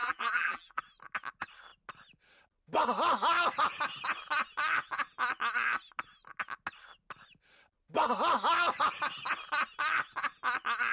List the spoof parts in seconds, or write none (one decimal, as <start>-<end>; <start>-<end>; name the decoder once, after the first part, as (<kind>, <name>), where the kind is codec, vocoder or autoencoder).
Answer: 0.0-0.8 (vocoder, BigVGAN v2)